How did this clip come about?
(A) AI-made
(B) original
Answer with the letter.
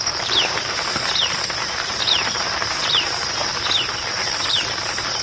A